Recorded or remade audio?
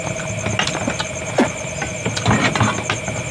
recorded